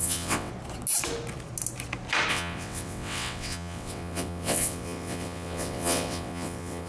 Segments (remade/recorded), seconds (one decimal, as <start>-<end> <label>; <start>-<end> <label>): 0.0-0.5 remade; 0.5-2.3 recorded; 2.3-6.9 remade